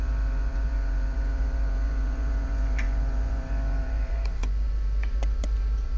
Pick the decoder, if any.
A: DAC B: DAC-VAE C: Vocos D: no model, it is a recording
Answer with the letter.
C